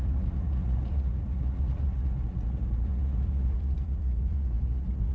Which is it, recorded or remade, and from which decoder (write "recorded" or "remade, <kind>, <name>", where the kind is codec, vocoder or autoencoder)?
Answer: remade, vocoder, Vocos